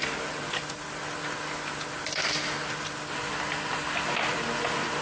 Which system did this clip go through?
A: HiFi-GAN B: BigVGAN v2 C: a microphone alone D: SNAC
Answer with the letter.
C